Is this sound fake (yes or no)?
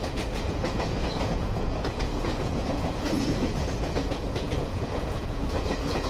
yes